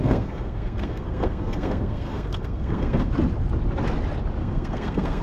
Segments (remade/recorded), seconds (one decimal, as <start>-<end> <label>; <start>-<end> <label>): 0.0-3.1 remade; 3.1-4.4 recorded; 4.4-5.2 remade